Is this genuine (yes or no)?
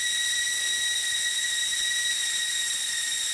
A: yes